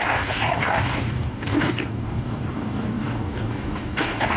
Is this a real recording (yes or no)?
no